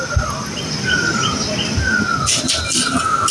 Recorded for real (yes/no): yes